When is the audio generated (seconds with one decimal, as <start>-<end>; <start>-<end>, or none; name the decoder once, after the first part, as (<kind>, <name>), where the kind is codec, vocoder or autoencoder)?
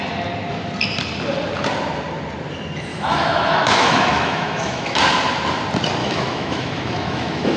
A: 2.9-5.0 (autoencoder, DAC-VAE); 6.0-7.6